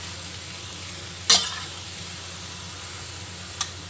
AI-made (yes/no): no